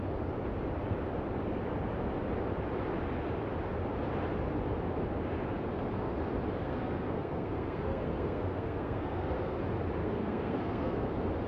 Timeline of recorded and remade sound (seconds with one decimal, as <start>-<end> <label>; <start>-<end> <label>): 0.0-6.6 recorded; 6.6-9.6 remade; 9.6-10.0 recorded; 10.0-11.1 remade; 11.1-11.5 recorded